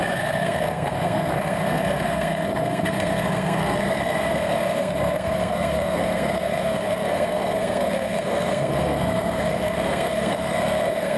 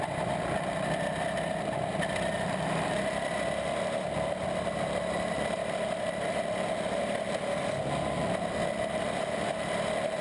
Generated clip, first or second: first